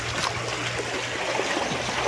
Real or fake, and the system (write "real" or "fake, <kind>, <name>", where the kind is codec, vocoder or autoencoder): real